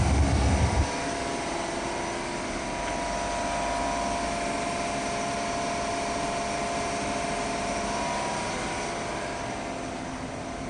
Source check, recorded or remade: recorded